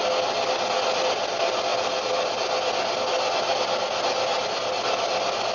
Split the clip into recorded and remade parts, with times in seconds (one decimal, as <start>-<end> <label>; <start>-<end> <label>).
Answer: 0.0-5.5 recorded